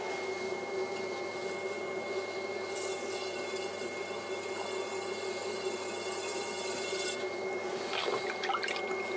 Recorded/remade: recorded